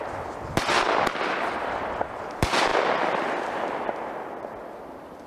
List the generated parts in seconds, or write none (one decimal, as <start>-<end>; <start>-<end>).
none